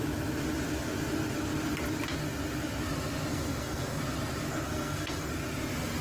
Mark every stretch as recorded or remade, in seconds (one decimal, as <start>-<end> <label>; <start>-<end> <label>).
0.0-3.3 recorded; 3.3-4.0 remade; 4.0-4.5 recorded; 4.5-5.3 remade; 5.3-6.0 recorded